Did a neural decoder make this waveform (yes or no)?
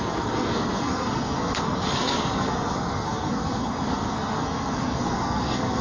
yes